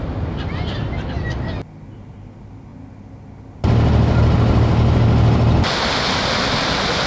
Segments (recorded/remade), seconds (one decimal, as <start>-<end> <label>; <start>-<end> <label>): 0.0-7.1 recorded